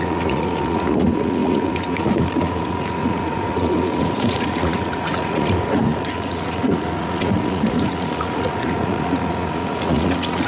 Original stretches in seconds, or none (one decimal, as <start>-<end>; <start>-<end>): none